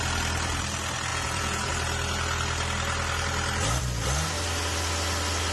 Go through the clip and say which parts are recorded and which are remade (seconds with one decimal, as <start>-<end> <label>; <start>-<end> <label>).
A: 0.0-1.1 recorded; 1.1-1.7 remade; 1.7-5.5 recorded